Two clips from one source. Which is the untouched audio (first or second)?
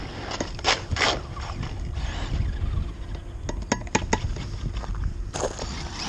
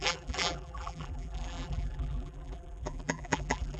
first